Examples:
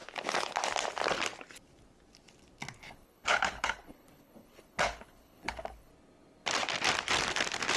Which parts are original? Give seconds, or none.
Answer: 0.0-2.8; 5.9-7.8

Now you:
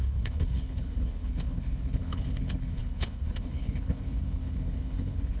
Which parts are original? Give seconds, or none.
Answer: none

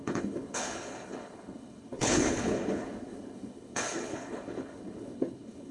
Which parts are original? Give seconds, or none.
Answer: none

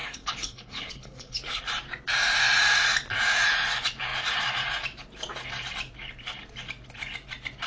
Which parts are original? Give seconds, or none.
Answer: 1.6-7.7

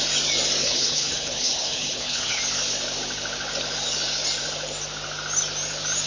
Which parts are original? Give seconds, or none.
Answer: 0.0-0.6; 2.4-6.1